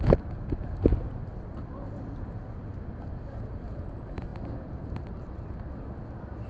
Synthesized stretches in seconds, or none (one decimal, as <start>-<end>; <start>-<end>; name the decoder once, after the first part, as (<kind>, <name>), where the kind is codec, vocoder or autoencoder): 4.3-5.7 (vocoder, BigVGAN v2)